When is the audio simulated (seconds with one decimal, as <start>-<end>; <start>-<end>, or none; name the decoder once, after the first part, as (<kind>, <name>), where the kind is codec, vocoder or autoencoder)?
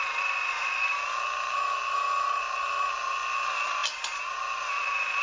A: none